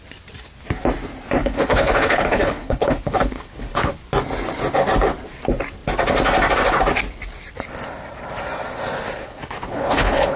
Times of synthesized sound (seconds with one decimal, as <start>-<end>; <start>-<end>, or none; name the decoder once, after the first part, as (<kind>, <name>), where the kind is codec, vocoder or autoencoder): 1.4-3.9 (codec, HILCodec); 9.2-10.4